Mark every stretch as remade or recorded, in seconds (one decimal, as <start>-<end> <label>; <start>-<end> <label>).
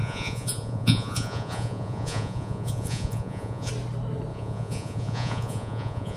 0.0-3.7 remade; 3.7-4.3 recorded; 4.3-6.2 remade